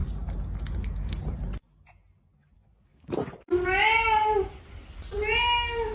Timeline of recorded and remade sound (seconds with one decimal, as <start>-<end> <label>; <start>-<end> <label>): 0.0-5.9 recorded